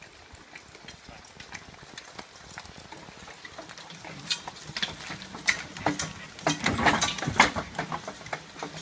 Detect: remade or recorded recorded